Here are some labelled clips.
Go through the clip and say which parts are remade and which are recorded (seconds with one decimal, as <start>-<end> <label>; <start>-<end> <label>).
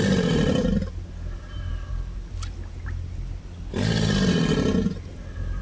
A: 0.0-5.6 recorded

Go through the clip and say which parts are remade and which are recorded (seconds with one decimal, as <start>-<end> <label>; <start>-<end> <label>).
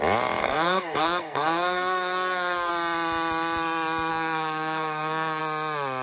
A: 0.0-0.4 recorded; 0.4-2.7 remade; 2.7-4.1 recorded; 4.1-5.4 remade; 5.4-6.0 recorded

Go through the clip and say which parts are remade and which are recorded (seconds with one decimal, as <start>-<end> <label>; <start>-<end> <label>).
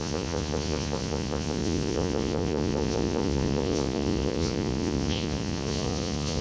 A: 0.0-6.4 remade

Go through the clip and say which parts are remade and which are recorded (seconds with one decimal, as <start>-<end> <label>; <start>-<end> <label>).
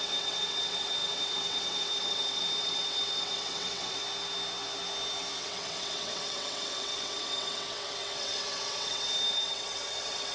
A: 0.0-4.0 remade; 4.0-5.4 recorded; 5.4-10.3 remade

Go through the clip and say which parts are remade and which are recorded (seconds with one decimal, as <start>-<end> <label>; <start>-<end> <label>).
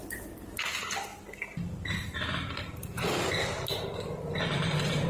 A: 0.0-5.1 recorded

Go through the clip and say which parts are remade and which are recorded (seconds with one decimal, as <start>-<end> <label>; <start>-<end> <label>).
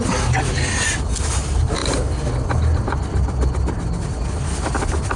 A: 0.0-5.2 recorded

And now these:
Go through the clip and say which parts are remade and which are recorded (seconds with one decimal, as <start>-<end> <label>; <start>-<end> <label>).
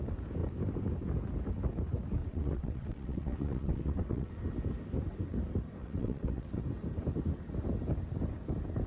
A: 0.0-2.2 recorded; 2.2-4.3 remade; 4.3-5.8 recorded; 5.8-6.6 remade; 6.6-8.9 recorded